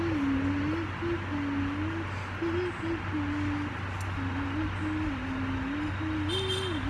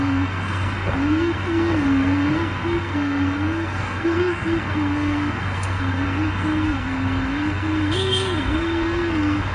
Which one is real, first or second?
first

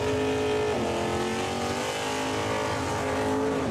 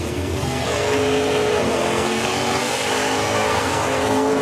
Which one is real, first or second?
first